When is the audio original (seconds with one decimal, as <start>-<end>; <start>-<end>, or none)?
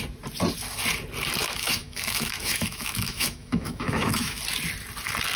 0.0-1.4; 4.4-5.4